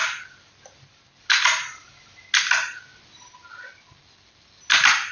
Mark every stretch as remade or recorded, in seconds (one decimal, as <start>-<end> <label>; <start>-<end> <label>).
0.0-5.1 recorded